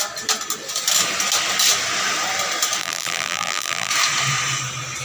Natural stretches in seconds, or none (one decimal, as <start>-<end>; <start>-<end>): 0.0-2.8; 3.9-5.0